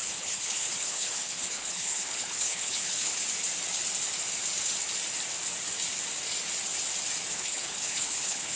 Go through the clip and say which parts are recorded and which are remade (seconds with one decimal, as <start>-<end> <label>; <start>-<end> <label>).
0.0-3.1 remade; 3.1-7.3 recorded; 7.3-8.6 remade